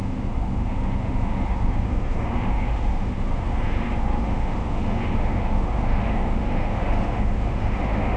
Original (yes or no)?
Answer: no